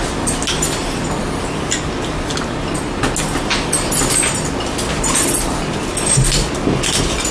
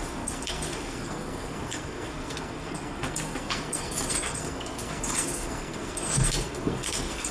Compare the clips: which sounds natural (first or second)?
first